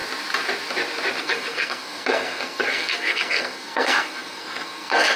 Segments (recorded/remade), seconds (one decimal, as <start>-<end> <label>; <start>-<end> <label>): 0.0-1.2 recorded; 1.2-5.2 remade

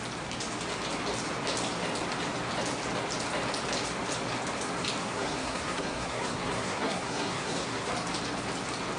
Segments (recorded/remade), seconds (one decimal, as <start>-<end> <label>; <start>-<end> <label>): 0.0-5.0 recorded; 5.0-7.9 remade; 7.9-9.0 recorded

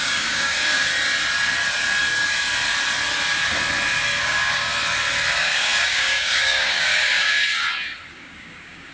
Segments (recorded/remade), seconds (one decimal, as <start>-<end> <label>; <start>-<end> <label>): 0.0-0.9 remade; 0.9-4.2 recorded; 4.2-4.7 remade; 4.7-5.3 recorded; 5.3-7.5 remade; 7.5-8.1 recorded; 8.1-8.9 remade

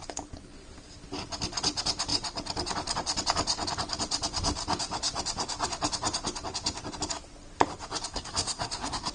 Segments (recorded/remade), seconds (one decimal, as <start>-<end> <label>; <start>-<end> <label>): 0.0-8.1 recorded; 8.1-9.1 remade

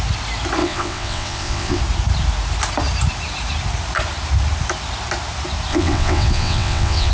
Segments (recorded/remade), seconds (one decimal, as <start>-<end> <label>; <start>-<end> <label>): 0.0-0.6 recorded; 0.6-1.8 remade; 1.8-5.7 recorded; 5.7-7.1 remade

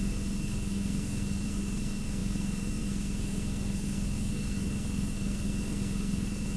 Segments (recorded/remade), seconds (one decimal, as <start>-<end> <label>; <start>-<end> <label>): 0.0-6.6 remade